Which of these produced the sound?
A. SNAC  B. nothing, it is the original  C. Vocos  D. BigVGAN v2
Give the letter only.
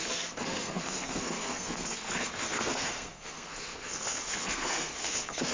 A